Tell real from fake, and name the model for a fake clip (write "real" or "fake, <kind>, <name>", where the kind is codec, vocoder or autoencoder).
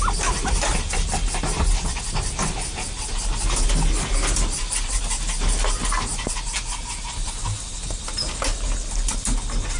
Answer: real